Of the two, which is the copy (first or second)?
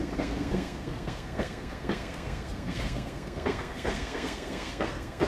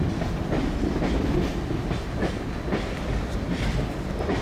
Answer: first